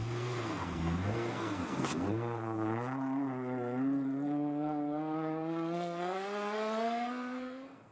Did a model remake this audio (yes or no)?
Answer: yes